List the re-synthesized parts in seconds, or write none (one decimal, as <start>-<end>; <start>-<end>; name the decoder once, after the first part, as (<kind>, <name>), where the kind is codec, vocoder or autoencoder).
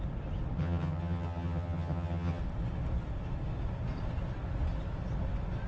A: 0.6-2.4 (vocoder, HiFi-GAN)